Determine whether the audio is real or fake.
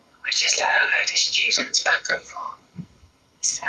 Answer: fake